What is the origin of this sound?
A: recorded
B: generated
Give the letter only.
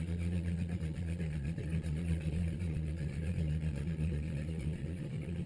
B